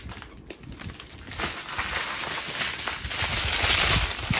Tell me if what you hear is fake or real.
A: real